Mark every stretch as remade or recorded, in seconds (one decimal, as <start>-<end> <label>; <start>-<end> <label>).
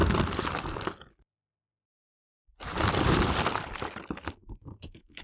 0.0-4.4 recorded; 4.4-5.2 remade